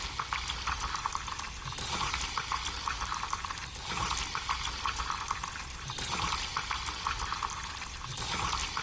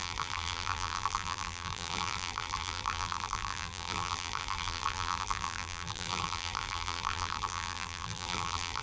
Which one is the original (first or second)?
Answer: first